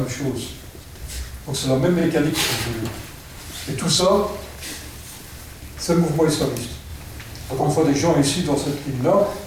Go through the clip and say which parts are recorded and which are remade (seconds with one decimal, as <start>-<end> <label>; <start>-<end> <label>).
0.0-1.1 remade; 1.1-2.0 recorded; 2.0-4.0 remade; 4.0-9.5 recorded